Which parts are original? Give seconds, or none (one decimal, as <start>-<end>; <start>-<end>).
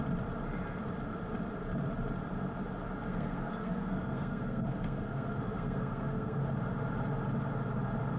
0.0-3.1; 6.4-8.2